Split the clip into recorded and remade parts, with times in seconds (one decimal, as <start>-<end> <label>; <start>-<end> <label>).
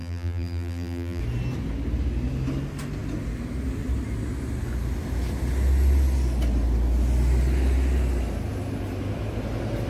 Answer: 0.0-1.2 remade; 1.2-9.9 recorded